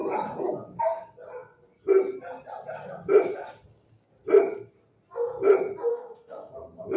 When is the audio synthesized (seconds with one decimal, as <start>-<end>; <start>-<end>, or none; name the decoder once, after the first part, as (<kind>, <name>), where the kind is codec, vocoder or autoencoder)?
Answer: 5.9-6.5 (autoencoder, DAC-VAE)